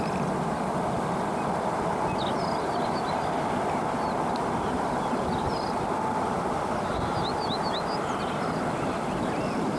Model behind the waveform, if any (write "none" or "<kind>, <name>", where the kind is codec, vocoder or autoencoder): none